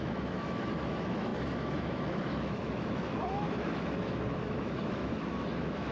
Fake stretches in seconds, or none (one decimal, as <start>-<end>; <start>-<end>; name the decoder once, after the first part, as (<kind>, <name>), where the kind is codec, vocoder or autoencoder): 0.0-5.9 (autoencoder, DAC-VAE)